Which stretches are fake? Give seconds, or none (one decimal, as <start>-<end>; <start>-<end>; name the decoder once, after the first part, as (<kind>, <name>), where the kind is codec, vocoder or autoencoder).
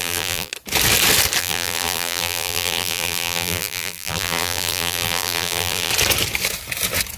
0.0-0.5 (vocoder, BigVGAN v2); 1.4-5.9